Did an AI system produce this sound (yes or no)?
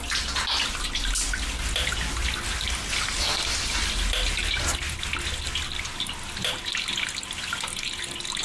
no